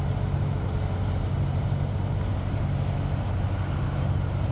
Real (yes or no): yes